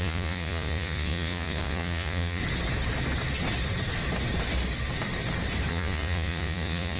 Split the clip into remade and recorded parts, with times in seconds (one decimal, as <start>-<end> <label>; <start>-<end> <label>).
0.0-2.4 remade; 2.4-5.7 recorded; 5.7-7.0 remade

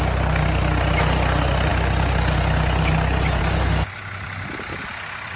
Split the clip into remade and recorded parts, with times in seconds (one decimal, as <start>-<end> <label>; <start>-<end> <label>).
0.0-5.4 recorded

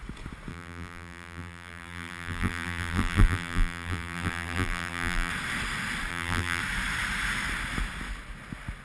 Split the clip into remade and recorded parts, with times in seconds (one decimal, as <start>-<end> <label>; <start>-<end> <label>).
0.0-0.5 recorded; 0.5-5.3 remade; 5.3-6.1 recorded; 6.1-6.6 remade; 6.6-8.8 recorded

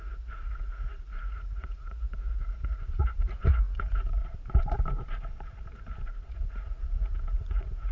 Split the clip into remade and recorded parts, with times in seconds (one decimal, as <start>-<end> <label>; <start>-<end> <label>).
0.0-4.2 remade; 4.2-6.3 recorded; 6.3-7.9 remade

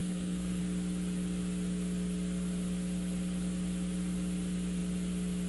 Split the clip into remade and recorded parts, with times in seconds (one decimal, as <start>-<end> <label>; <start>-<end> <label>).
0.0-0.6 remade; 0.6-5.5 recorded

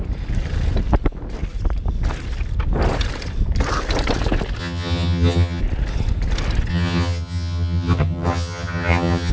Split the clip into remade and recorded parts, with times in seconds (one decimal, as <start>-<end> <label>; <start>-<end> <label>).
0.0-4.6 recorded; 4.6-5.6 remade; 5.6-6.7 recorded; 6.7-9.3 remade

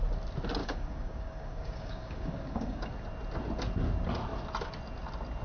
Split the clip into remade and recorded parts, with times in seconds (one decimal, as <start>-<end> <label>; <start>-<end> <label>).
0.0-0.6 recorded; 0.6-2.9 remade; 2.9-5.4 recorded

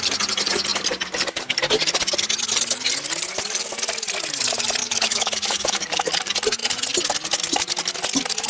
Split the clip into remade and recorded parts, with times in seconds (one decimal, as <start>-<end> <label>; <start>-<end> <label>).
0.0-4.8 recorded; 4.8-6.1 remade; 6.1-8.5 recorded